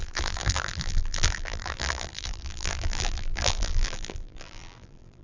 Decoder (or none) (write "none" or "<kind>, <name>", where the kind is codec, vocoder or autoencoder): vocoder, BigVGAN v2